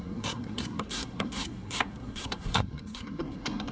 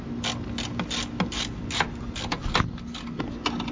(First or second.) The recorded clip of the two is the second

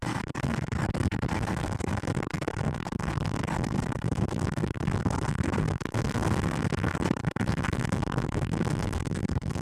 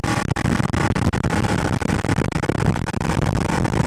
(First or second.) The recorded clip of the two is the second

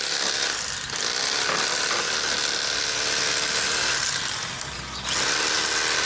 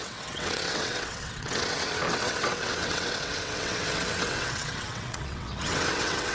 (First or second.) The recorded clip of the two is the first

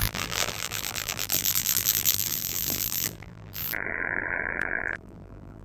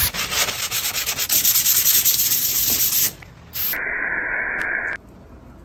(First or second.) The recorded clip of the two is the second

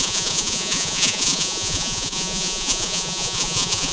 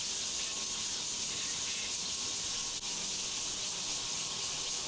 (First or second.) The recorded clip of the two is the second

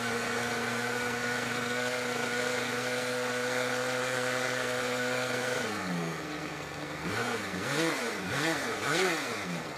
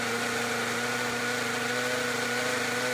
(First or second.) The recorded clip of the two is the second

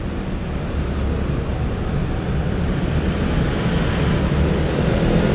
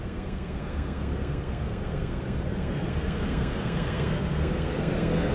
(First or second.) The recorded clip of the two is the first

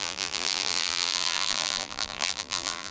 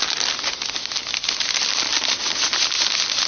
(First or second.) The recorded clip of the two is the second